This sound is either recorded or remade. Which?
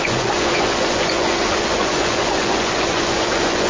remade